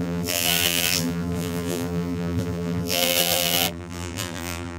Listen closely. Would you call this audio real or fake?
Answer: fake